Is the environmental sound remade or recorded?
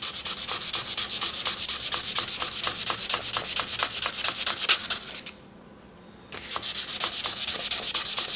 recorded